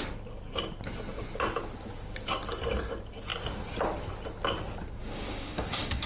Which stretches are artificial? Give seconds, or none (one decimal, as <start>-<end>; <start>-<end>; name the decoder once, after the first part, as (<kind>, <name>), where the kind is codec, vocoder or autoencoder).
5.0-6.1 (codec, DAC)